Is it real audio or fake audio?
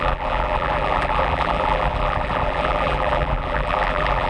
fake